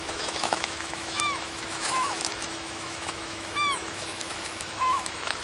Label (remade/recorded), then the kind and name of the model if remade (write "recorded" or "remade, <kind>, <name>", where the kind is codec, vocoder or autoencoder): remade, autoencoder, DAC-VAE